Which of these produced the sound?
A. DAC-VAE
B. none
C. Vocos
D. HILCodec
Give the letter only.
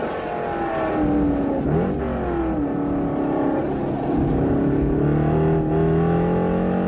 B